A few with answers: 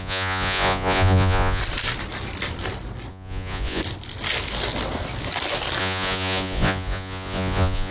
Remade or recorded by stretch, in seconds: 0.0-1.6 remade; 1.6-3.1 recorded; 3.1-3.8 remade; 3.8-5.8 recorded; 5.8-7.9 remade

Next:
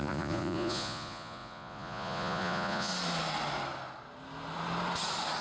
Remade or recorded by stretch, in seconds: 0.0-2.9 remade; 2.9-5.4 recorded

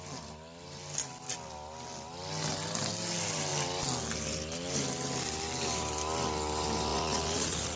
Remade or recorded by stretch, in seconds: 0.0-6.9 recorded; 6.9-7.8 remade

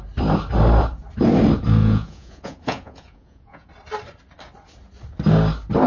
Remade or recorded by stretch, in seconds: 0.0-1.8 recorded; 1.8-3.7 remade; 3.7-5.9 recorded